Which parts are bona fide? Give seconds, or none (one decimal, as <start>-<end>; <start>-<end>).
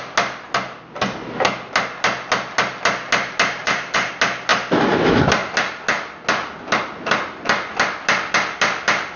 0.0-3.6; 4.1-9.2